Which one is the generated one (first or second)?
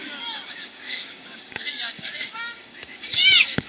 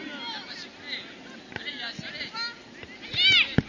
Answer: first